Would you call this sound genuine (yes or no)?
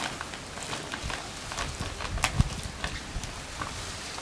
yes